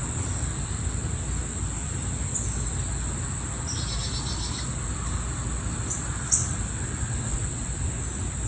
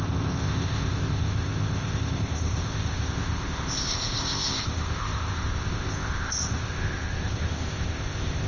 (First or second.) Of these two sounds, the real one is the first